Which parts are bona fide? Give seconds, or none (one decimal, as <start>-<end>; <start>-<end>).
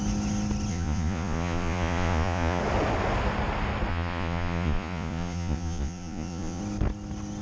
0.0-0.7; 2.6-3.9; 6.6-7.4